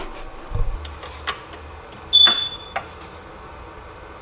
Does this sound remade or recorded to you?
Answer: recorded